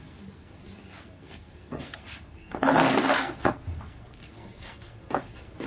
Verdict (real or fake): fake